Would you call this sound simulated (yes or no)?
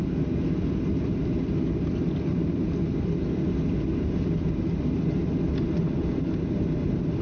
no